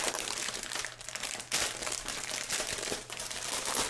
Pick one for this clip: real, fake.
fake